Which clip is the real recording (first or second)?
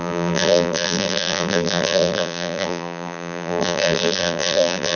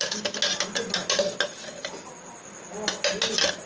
second